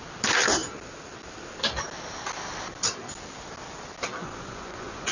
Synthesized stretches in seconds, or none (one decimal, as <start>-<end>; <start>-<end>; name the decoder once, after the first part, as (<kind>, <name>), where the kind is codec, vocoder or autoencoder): 4.2-5.1 (vocoder, Vocos)